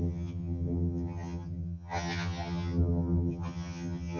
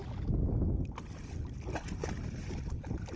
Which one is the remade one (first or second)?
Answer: first